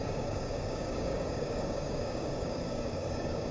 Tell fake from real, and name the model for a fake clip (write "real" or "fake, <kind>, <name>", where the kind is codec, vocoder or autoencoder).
fake, codec, DAC